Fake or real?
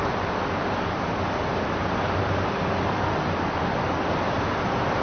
real